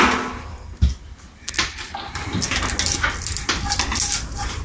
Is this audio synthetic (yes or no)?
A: no